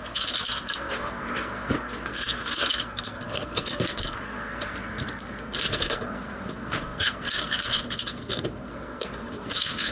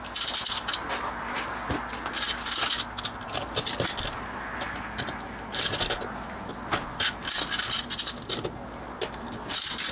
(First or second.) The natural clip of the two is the second